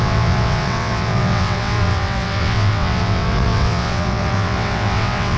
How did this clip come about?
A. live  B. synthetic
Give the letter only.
B